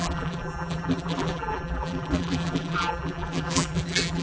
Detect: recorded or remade remade